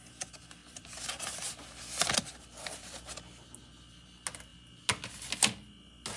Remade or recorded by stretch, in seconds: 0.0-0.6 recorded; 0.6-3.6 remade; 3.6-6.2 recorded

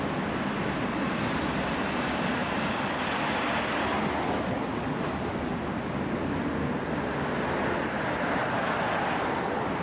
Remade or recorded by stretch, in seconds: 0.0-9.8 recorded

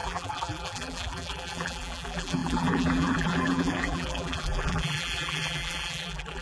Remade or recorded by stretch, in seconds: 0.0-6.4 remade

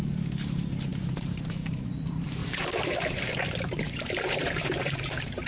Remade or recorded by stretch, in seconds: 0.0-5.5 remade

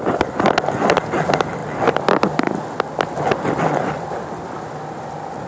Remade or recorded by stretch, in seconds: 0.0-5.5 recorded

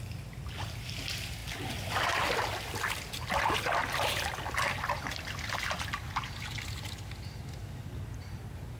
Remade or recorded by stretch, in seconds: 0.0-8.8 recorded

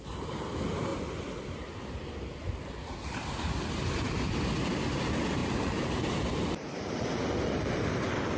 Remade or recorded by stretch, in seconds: 0.0-5.4 recorded; 5.4-7.8 remade; 7.8-8.4 recorded